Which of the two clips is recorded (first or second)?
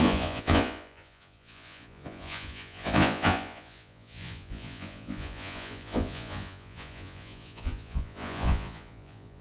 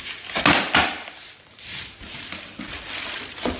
second